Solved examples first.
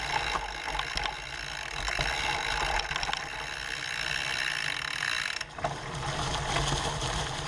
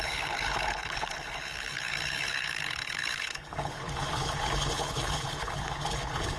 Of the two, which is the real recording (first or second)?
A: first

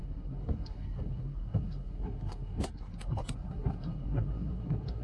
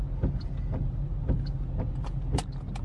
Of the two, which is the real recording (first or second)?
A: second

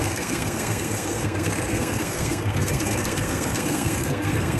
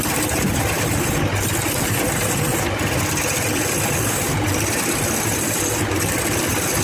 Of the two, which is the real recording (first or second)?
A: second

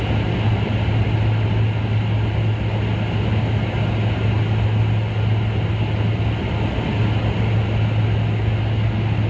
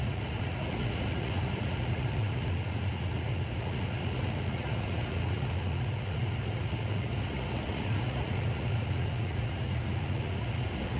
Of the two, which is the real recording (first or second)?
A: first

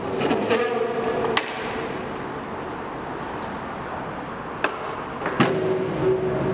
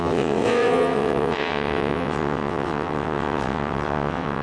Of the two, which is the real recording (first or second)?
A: first